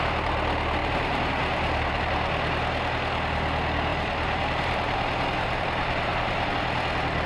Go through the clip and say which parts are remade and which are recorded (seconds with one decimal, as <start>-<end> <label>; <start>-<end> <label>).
0.0-0.8 recorded; 0.8-2.1 remade; 2.1-3.9 recorded; 3.9-6.5 remade; 6.5-7.3 recorded

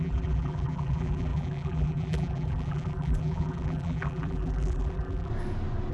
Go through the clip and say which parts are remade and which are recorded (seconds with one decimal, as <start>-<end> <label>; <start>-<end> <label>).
0.0-5.3 remade; 5.3-5.9 recorded

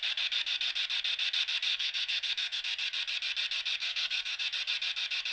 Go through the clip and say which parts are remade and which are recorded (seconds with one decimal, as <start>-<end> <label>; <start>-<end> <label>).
0.0-1.7 recorded; 1.7-2.6 remade; 2.6-3.8 recorded; 3.8-4.4 remade; 4.4-5.3 recorded

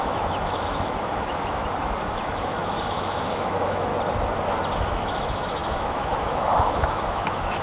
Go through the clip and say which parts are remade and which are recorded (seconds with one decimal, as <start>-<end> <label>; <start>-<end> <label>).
0.0-1.6 remade; 1.6-2.3 recorded; 2.3-3.9 remade; 3.9-4.7 recorded; 4.7-7.6 remade

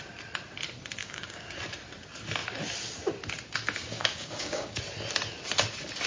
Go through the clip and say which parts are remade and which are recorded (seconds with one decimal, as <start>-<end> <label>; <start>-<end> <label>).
0.0-1.0 recorded; 1.0-1.6 remade; 1.6-3.8 recorded; 3.8-4.8 remade; 4.8-6.1 recorded